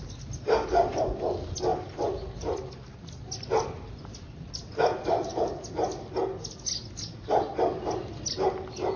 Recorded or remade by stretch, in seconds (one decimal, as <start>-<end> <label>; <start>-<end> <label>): 0.0-9.0 recorded